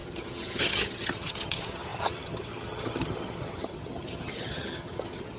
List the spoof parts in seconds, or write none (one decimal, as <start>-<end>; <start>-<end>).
0.0-5.4